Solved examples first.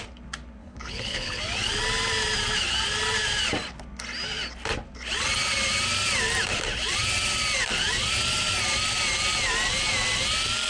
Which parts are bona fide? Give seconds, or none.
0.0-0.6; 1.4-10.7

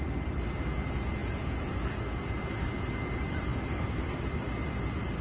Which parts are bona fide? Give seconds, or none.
0.0-5.2

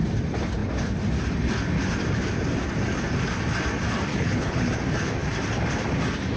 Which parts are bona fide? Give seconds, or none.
0.0-4.1; 4.7-6.4

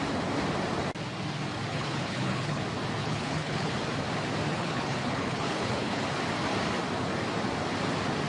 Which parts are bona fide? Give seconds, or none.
0.0-1.7; 2.6-3.0; 3.7-4.5; 6.0-8.3

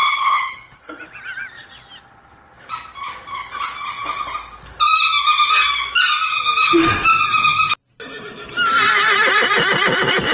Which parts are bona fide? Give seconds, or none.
0.8-10.3

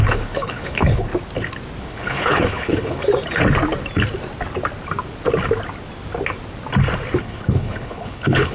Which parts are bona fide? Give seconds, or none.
1.1-1.8; 3.0-7.2

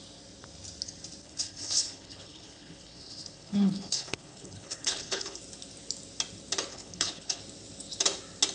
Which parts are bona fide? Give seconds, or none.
0.0-1.2; 5.4-6.7; 7.4-8.5